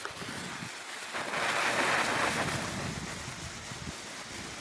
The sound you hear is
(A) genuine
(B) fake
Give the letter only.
A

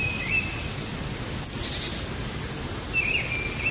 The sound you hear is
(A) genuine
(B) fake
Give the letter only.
A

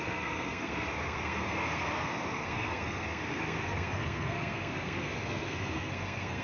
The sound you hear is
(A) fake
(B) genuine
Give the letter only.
A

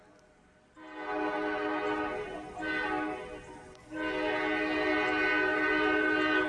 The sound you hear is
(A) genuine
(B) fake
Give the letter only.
A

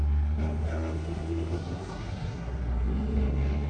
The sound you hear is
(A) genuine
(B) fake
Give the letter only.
B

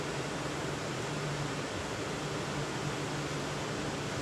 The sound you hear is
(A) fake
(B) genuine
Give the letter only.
B